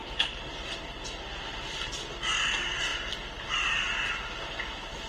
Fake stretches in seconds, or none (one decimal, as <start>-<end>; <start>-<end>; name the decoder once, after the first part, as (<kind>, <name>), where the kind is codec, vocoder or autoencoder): 0.0-1.9 (vocoder, BigVGAN v2)